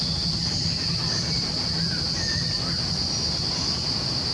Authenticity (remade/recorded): recorded